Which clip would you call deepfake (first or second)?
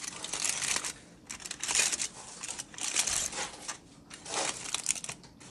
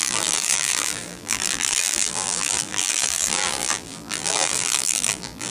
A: second